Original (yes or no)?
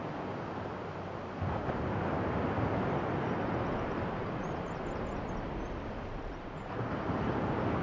yes